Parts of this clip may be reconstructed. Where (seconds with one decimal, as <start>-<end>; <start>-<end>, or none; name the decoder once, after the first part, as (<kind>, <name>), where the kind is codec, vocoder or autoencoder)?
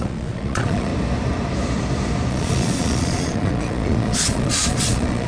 0.0-0.9 (vocoder, Vocos); 2.3-5.3